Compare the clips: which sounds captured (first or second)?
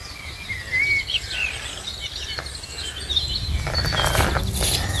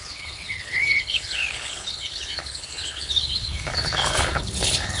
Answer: first